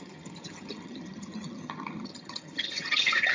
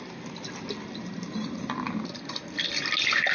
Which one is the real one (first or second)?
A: second